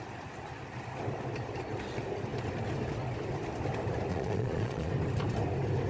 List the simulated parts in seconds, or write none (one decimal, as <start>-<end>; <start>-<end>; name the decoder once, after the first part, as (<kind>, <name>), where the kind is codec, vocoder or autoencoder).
4.1-4.9 (vocoder, Vocos)